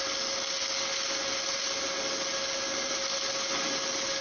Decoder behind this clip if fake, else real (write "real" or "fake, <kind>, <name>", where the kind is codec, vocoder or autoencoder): real